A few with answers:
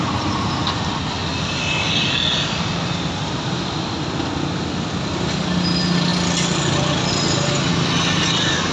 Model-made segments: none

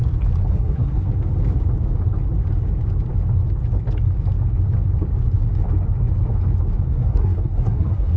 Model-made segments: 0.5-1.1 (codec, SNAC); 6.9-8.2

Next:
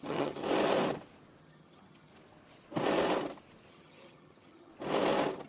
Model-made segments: 0.0-0.4 (vocoder, HiFi-GAN); 1.4-2.1; 3.7-4.7